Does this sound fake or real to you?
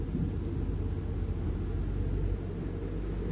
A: real